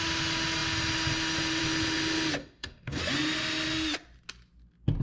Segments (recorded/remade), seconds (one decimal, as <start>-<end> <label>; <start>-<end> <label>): 0.0-2.4 recorded; 2.4-3.0 remade; 3.0-5.0 recorded

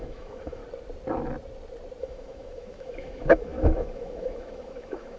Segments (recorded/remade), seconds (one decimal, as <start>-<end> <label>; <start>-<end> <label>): 0.0-0.6 remade; 0.6-2.0 recorded; 2.0-5.2 remade

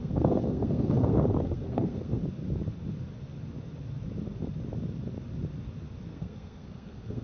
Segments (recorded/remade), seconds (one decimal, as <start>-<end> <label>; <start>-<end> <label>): 0.0-2.2 remade; 2.2-6.1 recorded; 6.1-7.2 remade

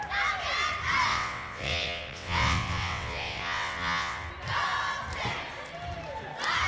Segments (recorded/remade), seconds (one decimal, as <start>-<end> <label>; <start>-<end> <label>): 0.0-1.1 recorded; 1.1-4.3 remade; 4.3-6.7 recorded

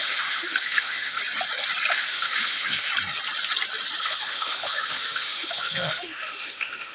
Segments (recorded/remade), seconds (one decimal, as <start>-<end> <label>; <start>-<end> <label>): 0.0-1.2 remade; 1.2-1.9 recorded; 1.9-2.9 remade; 2.9-4.0 recorded; 4.0-6.9 remade

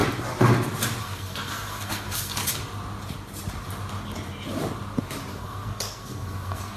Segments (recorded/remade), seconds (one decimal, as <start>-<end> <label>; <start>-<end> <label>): 0.0-1.0 recorded; 1.0-2.4 remade; 2.4-5.3 recorded; 5.3-6.8 remade

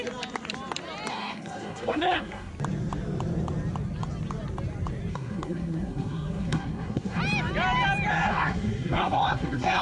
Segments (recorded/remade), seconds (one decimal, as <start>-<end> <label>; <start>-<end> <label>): 0.0-1.1 recorded; 1.1-2.5 remade; 2.5-5.1 recorded; 5.1-7.2 remade; 7.2-8.1 recorded; 8.1-9.8 remade